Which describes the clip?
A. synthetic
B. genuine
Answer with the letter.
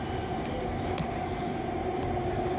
A